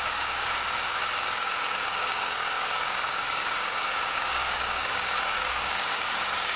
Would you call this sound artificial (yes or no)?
yes